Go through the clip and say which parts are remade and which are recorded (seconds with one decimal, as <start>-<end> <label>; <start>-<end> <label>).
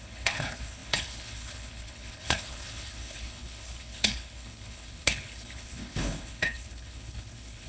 0.0-7.7 remade